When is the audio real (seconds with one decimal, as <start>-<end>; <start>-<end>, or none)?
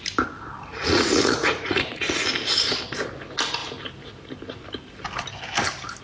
0.0-0.7; 2.2-6.0